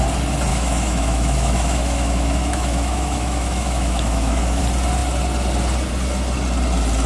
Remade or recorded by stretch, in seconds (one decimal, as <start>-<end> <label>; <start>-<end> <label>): 0.0-0.5 recorded; 0.5-4.6 remade; 4.6-7.1 recorded